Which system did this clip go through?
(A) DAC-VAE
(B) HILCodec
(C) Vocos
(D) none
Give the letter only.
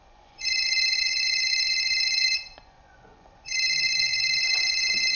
C